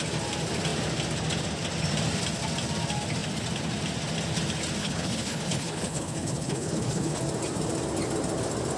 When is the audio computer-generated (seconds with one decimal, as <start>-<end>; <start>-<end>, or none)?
4.8-7.2